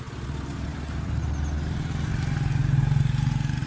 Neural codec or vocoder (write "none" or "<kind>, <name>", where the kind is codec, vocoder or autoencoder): none